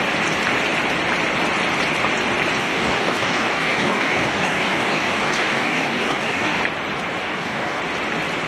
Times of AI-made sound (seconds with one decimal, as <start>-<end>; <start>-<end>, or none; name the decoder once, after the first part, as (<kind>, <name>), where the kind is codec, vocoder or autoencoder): 2.6-6.6 (codec, DAC); 7.2-7.8